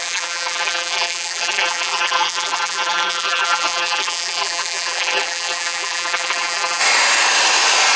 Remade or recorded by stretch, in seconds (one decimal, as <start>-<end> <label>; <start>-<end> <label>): 0.0-6.8 remade; 6.8-8.0 recorded